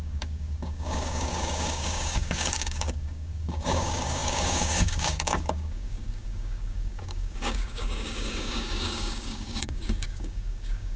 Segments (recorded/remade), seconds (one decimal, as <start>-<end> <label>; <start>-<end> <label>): 0.0-11.0 remade